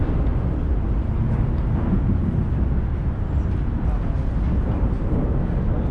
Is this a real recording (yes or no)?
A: yes